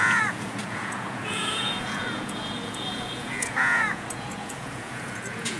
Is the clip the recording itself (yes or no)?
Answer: no